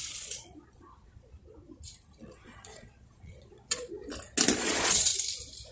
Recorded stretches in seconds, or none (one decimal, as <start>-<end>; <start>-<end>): 1.4-2.2; 4.0-4.6; 5.1-5.7